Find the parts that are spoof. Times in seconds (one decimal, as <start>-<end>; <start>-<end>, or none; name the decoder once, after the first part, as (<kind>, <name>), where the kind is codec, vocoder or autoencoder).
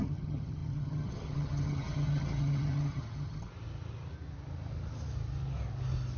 0.0-3.5 (vocoder, HiFi-GAN)